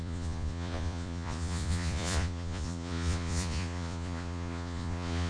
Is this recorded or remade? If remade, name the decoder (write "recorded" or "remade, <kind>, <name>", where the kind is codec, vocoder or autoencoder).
remade, vocoder, Vocos